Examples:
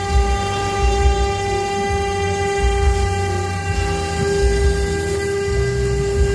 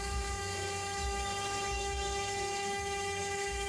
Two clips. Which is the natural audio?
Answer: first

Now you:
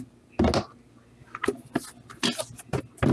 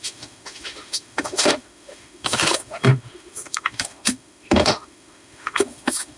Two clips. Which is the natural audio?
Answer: first